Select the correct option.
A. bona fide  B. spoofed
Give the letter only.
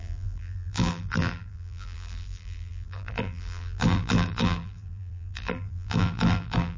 B